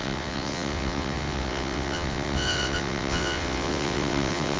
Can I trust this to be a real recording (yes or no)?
no